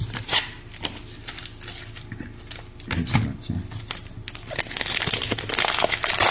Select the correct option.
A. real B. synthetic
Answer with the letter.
A